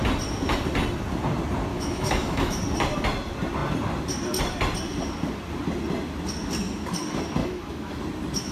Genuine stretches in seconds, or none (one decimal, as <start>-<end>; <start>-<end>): 0.0-1.7; 2.6-7.4; 8.0-8.5